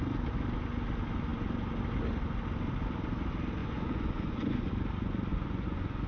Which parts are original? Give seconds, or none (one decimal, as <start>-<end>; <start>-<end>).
0.0-3.6; 4.7-5.3